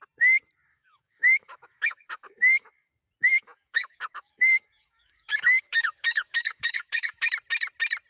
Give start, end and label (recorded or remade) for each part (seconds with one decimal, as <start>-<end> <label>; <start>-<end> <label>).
0.0-0.7 recorded; 0.7-2.9 remade; 2.9-3.4 recorded; 3.4-7.3 remade; 7.3-8.1 recorded